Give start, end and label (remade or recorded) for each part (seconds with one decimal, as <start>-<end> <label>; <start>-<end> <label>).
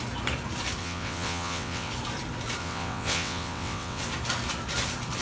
0.0-0.8 recorded; 0.8-1.9 remade; 1.9-2.6 recorded; 2.6-4.0 remade; 4.0-5.2 recorded